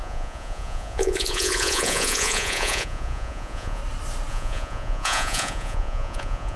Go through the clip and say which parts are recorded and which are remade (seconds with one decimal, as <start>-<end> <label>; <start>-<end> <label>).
0.0-3.8 remade; 3.8-4.3 recorded; 4.3-6.6 remade